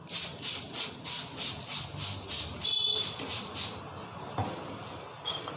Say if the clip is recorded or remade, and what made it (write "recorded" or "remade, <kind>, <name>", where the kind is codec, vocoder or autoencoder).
recorded